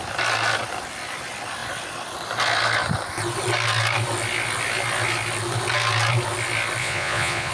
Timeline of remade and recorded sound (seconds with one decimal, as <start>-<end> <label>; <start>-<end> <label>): 0.0-6.8 recorded; 6.8-7.5 remade